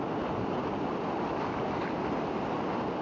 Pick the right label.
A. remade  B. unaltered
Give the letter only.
B